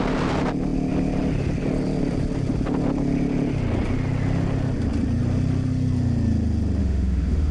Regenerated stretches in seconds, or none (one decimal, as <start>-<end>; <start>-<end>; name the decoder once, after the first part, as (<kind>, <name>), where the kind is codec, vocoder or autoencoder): 6.8-7.5 (autoencoder, DAC-VAE)